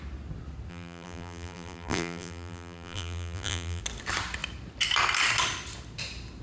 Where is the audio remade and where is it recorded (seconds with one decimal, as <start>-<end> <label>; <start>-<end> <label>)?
0.0-0.7 recorded; 0.7-3.8 remade; 3.8-6.4 recorded